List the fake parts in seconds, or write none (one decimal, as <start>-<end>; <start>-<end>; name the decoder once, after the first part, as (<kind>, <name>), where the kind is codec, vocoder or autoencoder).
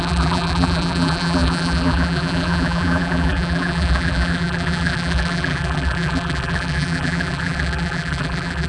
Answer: 0.0-8.7 (vocoder, BigVGAN v2)